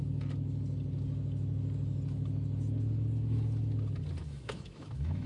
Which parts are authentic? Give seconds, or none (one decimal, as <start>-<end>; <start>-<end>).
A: 0.0-4.2